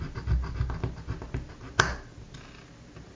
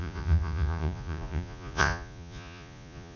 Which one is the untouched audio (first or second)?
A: first